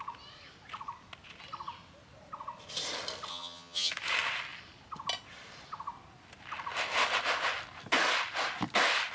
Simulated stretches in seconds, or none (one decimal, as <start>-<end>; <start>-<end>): 3.3-3.9